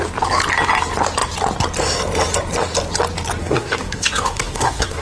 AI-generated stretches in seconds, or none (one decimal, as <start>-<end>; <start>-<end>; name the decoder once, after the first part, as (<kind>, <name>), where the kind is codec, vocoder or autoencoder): 3.4-5.0 (codec, SNAC)